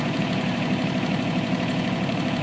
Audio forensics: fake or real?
fake